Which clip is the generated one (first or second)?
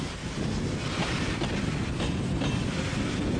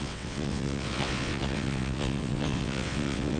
second